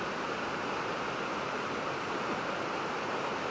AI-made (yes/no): no